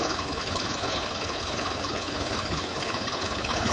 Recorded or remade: remade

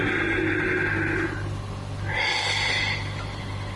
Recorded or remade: recorded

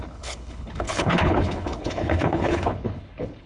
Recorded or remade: remade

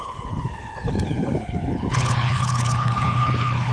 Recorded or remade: remade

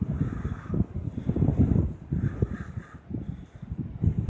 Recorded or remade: recorded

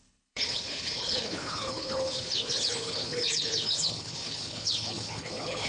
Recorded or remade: remade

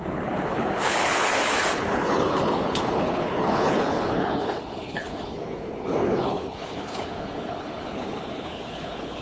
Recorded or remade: remade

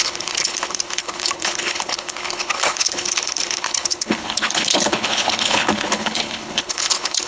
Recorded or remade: remade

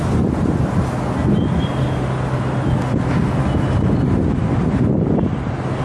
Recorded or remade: recorded